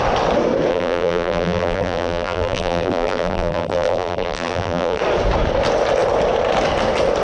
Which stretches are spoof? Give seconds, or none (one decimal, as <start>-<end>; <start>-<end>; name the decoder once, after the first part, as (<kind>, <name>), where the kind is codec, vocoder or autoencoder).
0.7-5.0 (vocoder, BigVGAN v2)